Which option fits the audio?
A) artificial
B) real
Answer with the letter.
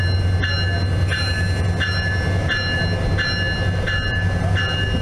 B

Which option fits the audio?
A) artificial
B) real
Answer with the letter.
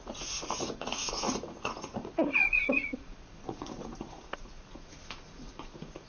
A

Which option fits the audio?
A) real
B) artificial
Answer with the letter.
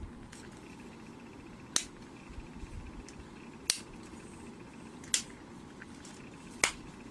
A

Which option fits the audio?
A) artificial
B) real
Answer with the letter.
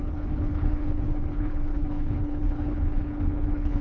A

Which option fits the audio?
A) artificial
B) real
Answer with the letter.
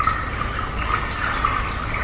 B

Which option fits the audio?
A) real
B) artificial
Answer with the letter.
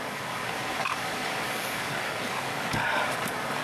B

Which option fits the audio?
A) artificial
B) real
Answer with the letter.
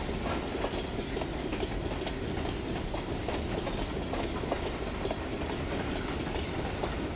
B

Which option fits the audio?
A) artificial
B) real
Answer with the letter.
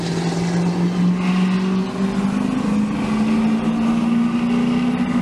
B